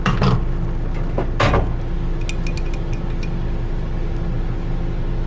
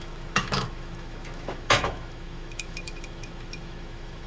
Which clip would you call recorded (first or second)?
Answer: first